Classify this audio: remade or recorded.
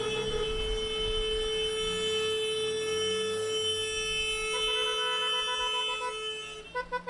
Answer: recorded